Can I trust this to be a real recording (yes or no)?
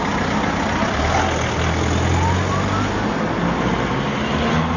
yes